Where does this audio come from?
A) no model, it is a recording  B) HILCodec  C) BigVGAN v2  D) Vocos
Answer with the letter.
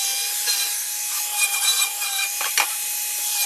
A